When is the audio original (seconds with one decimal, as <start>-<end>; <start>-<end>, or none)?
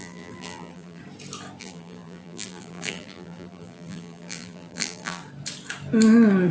1.0-1.6; 5.2-6.5